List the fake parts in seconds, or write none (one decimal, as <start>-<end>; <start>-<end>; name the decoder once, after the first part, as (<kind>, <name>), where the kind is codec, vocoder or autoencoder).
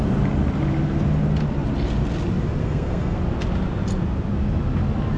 2.6-3.2 (codec, SNAC)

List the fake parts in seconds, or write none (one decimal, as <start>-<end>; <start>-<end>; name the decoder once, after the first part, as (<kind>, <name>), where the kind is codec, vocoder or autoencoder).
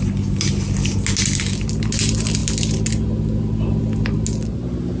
none